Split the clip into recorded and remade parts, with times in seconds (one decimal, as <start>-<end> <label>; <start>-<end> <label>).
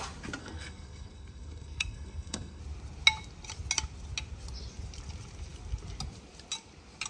0.0-0.4 recorded; 0.4-2.6 remade; 2.6-7.1 recorded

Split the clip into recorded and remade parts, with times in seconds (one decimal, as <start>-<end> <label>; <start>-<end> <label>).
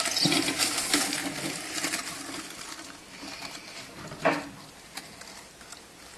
0.0-6.2 recorded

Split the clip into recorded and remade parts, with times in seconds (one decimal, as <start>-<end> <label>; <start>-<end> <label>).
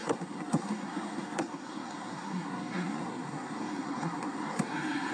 0.0-5.1 remade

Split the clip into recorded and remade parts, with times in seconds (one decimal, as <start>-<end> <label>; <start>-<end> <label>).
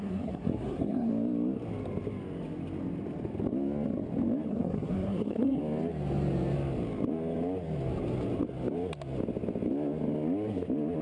0.0-1.1 remade; 1.1-4.5 recorded; 4.5-5.6 remade; 5.6-11.0 recorded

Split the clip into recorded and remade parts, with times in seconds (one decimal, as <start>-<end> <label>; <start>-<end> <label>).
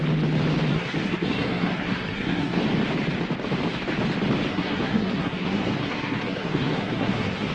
0.0-0.7 recorded; 0.7-2.6 remade; 2.6-4.5 recorded; 4.5-7.5 remade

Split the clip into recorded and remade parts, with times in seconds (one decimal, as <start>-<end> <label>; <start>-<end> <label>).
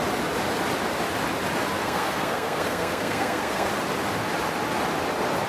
0.0-1.8 recorded; 1.8-3.7 remade; 3.7-5.5 recorded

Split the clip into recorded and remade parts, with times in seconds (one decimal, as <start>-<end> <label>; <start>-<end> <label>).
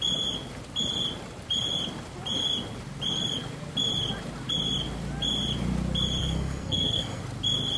0.0-6.2 recorded; 6.2-7.2 remade; 7.2-7.8 recorded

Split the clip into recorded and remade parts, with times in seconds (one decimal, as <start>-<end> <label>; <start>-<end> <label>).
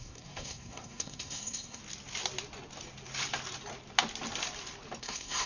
0.0-1.8 remade; 1.8-5.0 recorded; 5.0-5.5 remade